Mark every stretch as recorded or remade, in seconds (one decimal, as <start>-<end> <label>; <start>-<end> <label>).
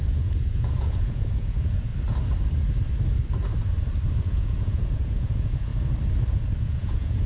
0.0-1.9 remade; 1.9-4.2 recorded; 4.2-5.7 remade; 5.7-6.6 recorded; 6.6-7.3 remade